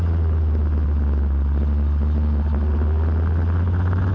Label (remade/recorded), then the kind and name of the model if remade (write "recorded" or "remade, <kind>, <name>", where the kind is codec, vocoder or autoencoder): recorded